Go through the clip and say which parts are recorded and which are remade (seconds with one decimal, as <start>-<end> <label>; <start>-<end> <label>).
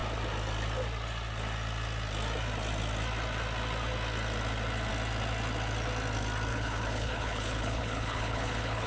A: 0.0-6.5 recorded; 6.5-8.9 remade